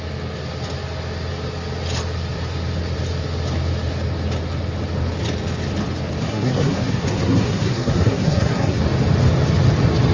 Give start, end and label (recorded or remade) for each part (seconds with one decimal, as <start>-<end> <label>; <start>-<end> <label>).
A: 0.0-6.2 recorded; 6.2-8.8 remade; 8.8-10.1 recorded